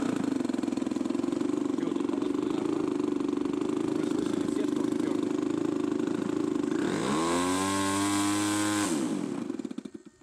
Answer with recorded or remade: recorded